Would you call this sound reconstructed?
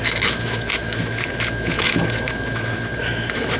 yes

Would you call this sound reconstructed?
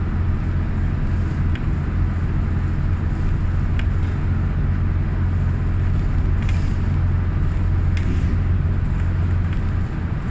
no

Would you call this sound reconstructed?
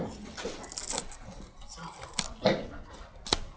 no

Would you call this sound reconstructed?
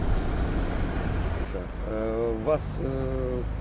no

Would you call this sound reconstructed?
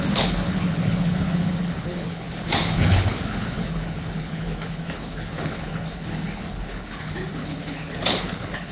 yes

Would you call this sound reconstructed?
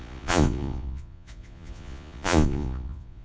yes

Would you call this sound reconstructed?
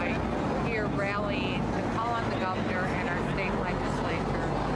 no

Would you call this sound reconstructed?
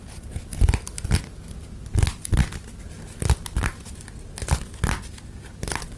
no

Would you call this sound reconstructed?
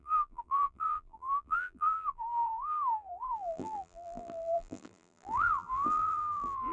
yes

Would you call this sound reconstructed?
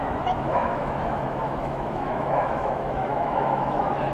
yes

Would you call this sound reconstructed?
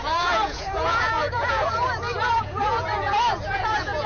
yes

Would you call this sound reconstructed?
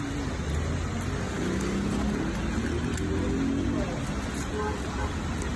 no